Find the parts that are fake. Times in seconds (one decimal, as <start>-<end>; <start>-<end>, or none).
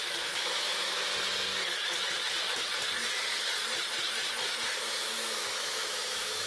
0.0-1.1; 5.0-6.5